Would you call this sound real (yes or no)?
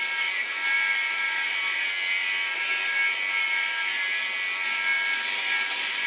yes